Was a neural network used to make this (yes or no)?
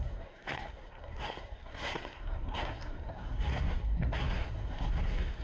yes